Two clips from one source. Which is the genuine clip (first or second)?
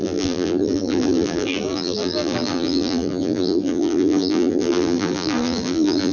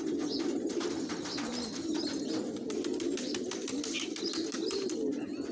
second